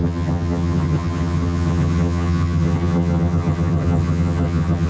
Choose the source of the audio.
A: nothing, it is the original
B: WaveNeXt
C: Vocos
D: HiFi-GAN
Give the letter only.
D